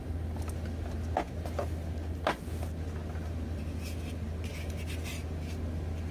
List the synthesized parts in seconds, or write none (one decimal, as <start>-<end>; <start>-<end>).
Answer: none